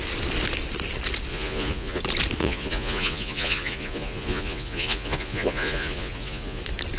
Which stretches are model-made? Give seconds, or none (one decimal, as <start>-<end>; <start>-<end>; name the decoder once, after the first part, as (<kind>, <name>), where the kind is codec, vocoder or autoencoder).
1.3-2.0 (vocoder, Vocos); 2.4-6.6